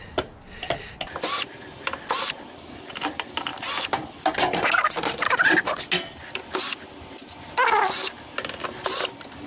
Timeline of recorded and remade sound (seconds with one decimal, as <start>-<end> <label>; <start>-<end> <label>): 0.0-9.5 recorded